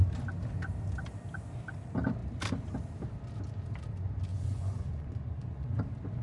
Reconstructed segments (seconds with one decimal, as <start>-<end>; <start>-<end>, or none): 4.3-5.8